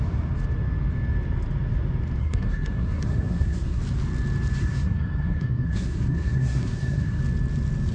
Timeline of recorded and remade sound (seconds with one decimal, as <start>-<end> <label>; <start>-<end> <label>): 0.0-2.2 recorded; 2.2-3.8 remade; 3.8-4.6 recorded; 4.6-7.2 remade; 7.2-7.9 recorded